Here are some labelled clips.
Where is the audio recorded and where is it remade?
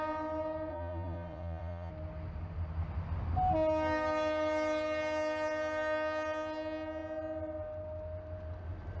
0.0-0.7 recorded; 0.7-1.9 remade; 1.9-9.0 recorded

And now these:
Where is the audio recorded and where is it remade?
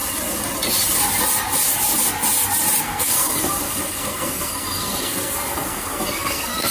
0.0-2.8 recorded; 2.8-6.7 remade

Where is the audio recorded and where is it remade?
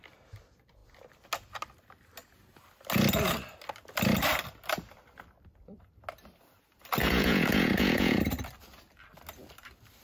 0.0-7.0 recorded; 7.0-8.2 remade; 8.2-10.0 recorded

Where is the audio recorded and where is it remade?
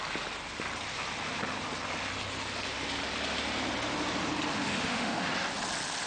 0.0-4.5 recorded; 4.5-5.3 remade; 5.3-6.1 recorded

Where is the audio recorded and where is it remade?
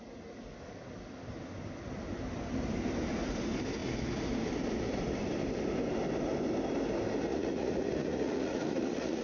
0.0-7.3 recorded; 7.3-9.2 remade